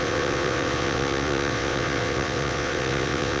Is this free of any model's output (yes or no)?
no